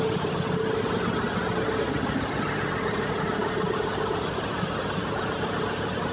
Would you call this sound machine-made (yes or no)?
no